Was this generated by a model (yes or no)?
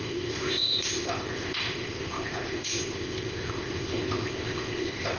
yes